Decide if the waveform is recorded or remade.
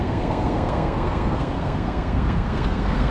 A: remade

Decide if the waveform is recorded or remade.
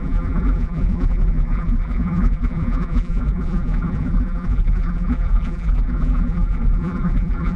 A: remade